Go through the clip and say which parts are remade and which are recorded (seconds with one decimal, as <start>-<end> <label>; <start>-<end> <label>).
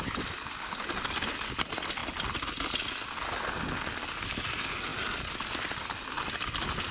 0.0-6.9 recorded